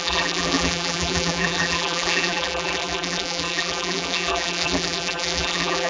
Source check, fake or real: fake